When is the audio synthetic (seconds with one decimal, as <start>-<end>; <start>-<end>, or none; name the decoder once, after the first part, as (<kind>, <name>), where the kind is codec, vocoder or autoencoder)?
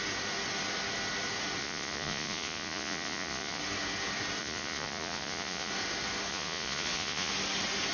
1.6-3.6 (vocoder, Vocos); 4.4-5.7; 6.3-7.3